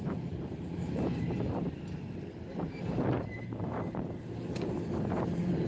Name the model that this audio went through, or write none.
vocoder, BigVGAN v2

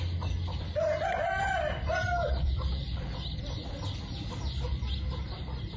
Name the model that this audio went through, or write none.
none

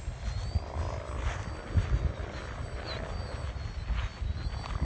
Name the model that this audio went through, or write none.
none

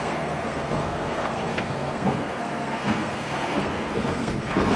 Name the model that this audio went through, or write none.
codec, SNAC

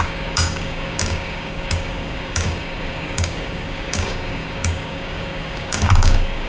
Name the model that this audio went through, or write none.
codec, DAC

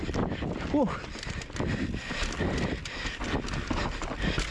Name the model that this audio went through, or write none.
none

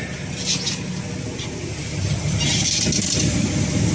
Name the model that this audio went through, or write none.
none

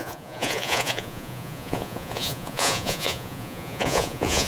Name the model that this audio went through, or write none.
vocoder, Vocos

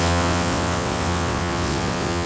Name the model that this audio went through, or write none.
vocoder, WaveNeXt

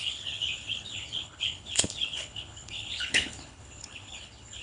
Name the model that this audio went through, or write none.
codec, HILCodec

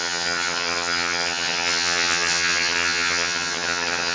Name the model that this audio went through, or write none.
vocoder, HiFi-GAN